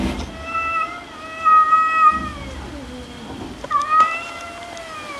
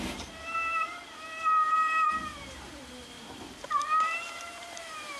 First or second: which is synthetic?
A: second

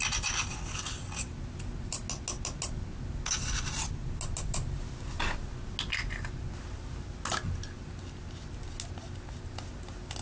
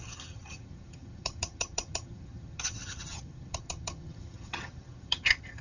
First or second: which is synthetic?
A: second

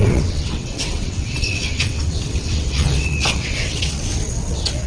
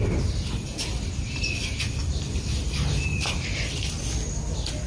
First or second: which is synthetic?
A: first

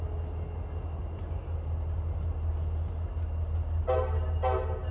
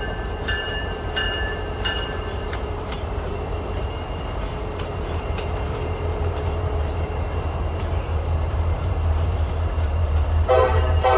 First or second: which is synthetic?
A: second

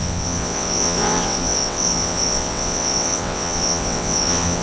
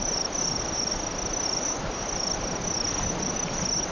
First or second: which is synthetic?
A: first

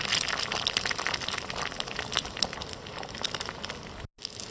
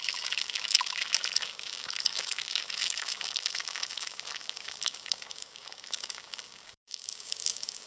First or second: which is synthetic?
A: second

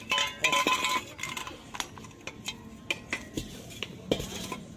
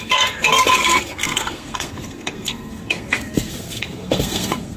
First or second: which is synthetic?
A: second